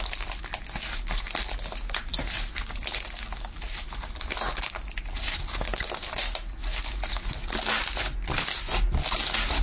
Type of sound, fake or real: real